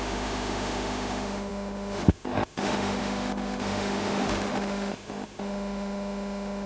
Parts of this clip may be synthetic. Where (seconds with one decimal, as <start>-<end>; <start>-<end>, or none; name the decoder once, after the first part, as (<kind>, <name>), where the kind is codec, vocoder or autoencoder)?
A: 0.0-6.7 (autoencoder, DAC-VAE)